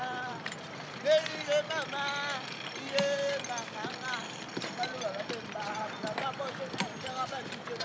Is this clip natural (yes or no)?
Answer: yes